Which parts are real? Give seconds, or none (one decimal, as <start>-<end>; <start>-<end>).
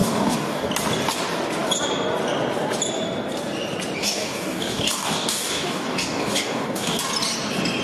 0.7-4.0; 7.0-7.8